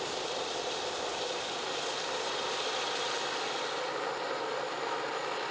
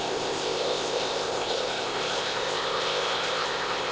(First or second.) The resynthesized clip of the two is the second